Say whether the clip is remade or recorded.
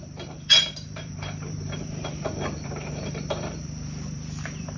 remade